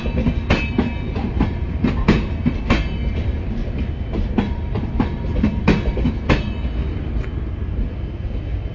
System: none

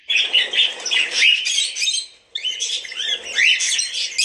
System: none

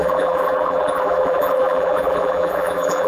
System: vocoder, BigVGAN v2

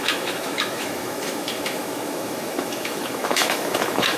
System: autoencoder, DAC-VAE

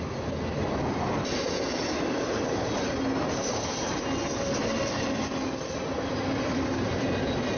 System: none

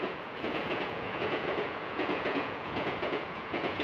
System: vocoder, Vocos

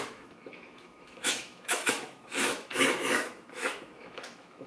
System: autoencoder, DAC-VAE